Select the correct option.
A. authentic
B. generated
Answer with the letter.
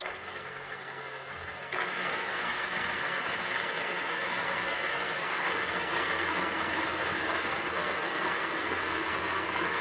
B